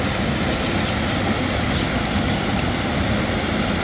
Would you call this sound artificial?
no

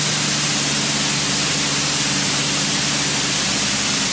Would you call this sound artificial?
no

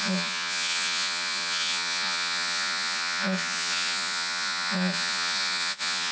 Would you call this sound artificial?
yes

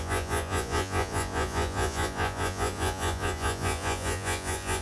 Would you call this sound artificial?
yes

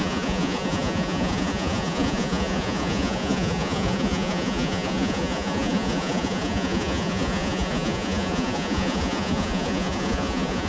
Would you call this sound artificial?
yes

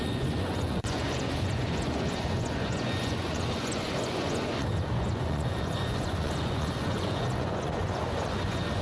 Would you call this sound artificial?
yes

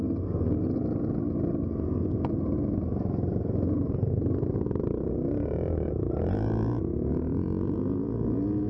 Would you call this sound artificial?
no